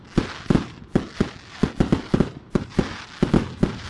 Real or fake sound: real